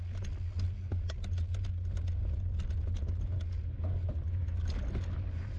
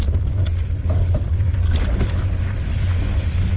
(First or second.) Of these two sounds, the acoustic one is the first